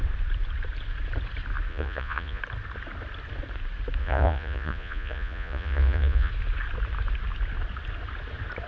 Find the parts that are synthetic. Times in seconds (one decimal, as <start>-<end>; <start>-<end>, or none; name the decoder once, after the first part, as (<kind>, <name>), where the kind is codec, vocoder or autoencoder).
1.7-2.4 (vocoder, Vocos); 4.0-6.3